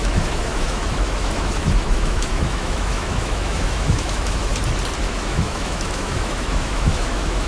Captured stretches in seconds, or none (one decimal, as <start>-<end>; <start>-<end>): 4.5-5.0